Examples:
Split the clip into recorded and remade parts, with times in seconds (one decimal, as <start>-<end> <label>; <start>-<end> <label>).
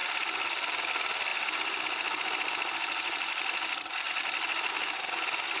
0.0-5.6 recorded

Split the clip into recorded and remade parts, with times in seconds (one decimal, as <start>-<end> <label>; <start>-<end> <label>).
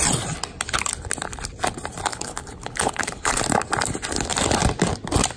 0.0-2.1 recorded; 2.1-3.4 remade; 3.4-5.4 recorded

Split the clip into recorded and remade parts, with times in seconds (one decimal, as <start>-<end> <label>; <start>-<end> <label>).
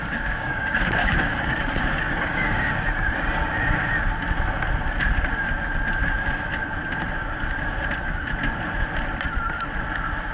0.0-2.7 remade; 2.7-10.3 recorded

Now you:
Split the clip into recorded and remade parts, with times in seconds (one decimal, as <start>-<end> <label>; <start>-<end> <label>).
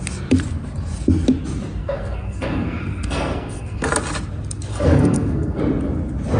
0.0-1.8 recorded; 1.8-3.9 remade; 3.9-4.7 recorded; 4.7-5.6 remade; 5.6-6.4 recorded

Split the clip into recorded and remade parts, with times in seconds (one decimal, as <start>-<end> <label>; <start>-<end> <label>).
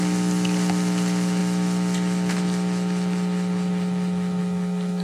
0.0-5.0 recorded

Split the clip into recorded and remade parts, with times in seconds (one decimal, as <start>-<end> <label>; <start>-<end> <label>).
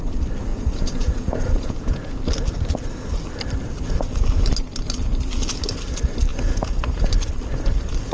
0.0-0.5 recorded; 0.5-2.2 remade; 2.2-6.3 recorded; 6.3-7.1 remade; 7.1-8.1 recorded